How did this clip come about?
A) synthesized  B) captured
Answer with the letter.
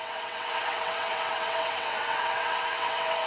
A